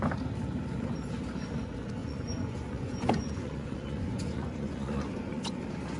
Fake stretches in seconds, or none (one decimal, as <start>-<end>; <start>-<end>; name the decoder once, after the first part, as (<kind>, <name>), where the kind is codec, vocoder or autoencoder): 2.0-5.6 (vocoder, Vocos)